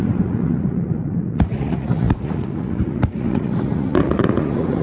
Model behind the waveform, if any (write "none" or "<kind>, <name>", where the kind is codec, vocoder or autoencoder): vocoder, Vocos